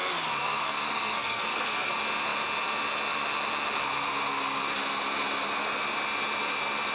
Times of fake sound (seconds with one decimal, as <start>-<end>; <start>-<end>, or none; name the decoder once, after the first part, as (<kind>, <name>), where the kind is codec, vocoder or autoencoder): 0.4-1.9 (codec, SNAC)